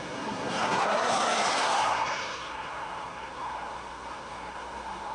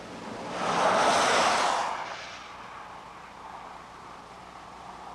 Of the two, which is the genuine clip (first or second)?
second